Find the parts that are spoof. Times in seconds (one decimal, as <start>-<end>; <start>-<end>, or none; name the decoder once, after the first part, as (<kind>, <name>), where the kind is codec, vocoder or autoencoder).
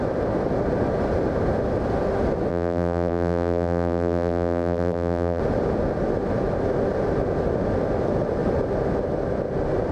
2.5-5.4 (vocoder, BigVGAN v2)